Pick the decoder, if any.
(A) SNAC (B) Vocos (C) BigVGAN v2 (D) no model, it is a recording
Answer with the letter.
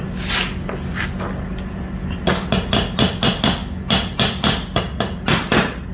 D